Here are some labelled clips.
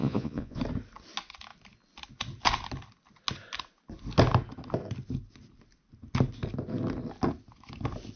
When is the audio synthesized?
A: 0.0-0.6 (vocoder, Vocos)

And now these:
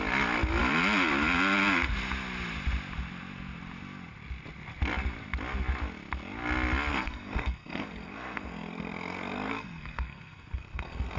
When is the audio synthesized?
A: 6.9-11.2 (codec, SNAC)

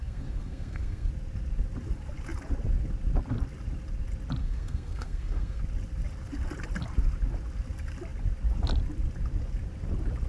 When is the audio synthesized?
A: 0.0-1.1 (codec, SNAC); 4.4-5.6